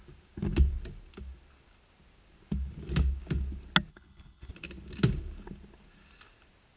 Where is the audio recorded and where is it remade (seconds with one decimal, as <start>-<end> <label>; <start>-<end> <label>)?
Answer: 0.0-3.9 recorded; 3.9-4.5 remade; 4.5-6.8 recorded